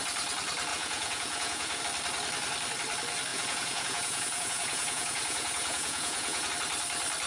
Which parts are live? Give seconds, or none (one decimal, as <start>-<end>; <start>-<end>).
0.0-0.7; 1.8-3.3; 6.5-7.3